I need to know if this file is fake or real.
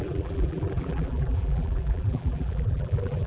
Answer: fake